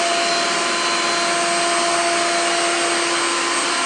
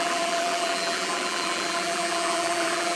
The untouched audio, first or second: first